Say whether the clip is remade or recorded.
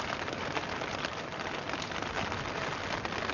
recorded